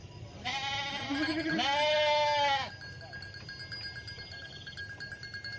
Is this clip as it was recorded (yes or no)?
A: yes